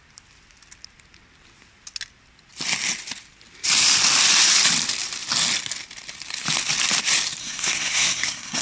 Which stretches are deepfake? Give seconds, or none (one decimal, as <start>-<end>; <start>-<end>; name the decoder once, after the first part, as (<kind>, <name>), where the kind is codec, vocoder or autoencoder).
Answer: 7.4-8.6 (codec, SNAC)